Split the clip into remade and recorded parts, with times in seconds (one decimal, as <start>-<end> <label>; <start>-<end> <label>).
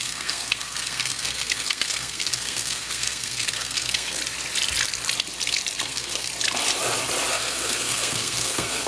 0.0-4.2 remade; 4.2-5.8 recorded; 5.8-6.3 remade; 6.3-7.3 recorded; 7.3-8.9 remade